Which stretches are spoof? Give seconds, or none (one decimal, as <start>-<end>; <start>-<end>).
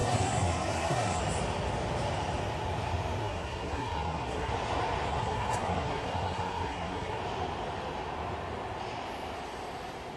0.0-1.2; 3.2-4.5; 5.1-7.2